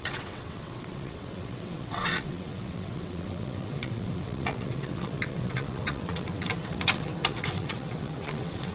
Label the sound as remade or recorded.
remade